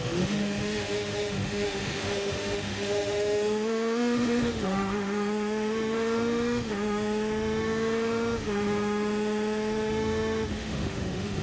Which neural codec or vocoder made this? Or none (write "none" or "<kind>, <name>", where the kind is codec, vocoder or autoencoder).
autoencoder, DAC-VAE